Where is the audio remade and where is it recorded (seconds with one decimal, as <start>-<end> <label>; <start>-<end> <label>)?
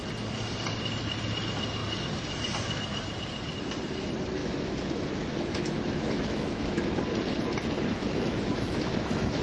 0.0-4.4 recorded; 4.4-7.0 remade; 7.0-7.9 recorded; 7.9-9.4 remade